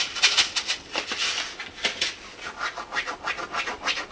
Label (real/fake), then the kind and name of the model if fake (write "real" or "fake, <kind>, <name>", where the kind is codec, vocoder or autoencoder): real